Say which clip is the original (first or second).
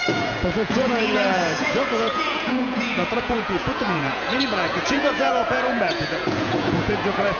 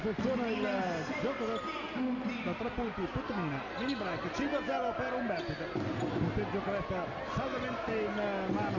second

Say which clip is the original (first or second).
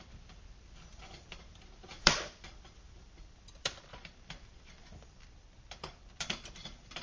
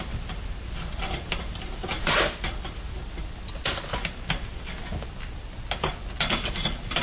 second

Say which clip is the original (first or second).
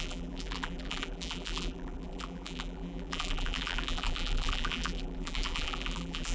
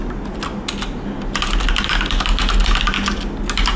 second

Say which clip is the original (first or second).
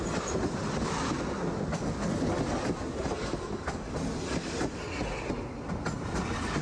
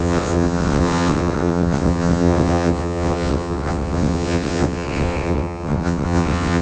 first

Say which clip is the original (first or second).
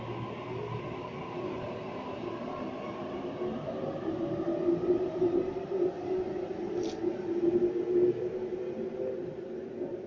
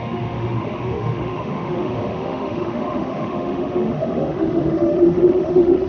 first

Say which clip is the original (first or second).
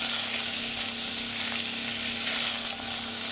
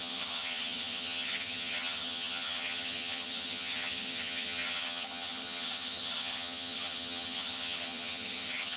first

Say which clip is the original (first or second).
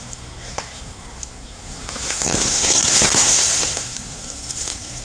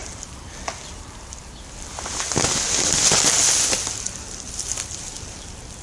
second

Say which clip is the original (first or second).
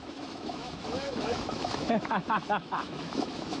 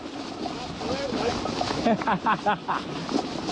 second